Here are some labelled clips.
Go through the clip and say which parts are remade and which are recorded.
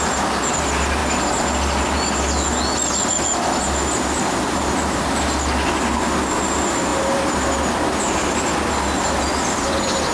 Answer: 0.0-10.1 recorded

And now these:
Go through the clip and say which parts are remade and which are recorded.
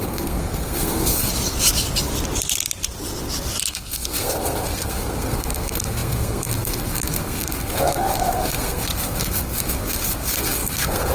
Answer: 0.0-1.3 remade; 1.3-3.7 recorded; 3.7-11.1 remade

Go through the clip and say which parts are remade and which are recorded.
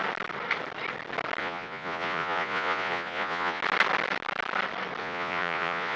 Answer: 0.0-1.4 recorded; 1.4-3.6 remade; 3.6-5.0 recorded; 5.0-6.0 remade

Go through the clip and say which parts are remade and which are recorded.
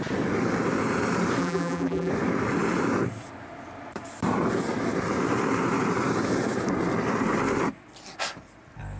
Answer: 0.0-1.4 recorded; 1.4-2.1 remade; 2.1-9.0 recorded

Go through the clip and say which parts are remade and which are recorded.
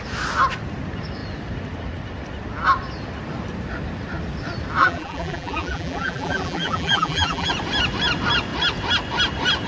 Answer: 0.0-4.8 recorded; 4.8-7.5 remade; 7.5-9.7 recorded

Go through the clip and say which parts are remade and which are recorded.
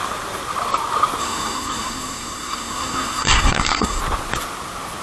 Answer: 0.0-1.2 recorded; 1.2-4.0 remade; 4.0-5.0 recorded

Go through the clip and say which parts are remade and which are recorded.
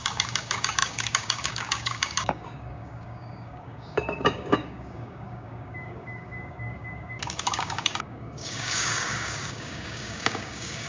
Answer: 0.0-10.9 remade